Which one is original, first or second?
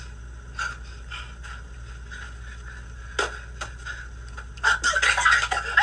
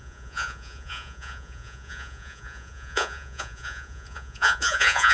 first